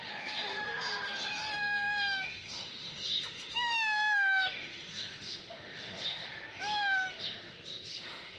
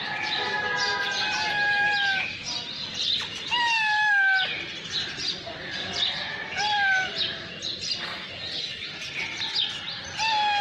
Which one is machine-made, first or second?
first